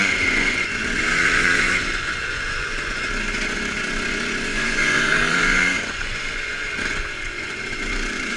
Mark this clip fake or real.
fake